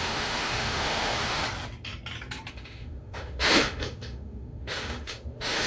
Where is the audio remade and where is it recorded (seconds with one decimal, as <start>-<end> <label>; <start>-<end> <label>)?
0.0-1.4 remade; 1.4-2.5 recorded; 2.5-5.7 remade